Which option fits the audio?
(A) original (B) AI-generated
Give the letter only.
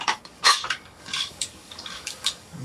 B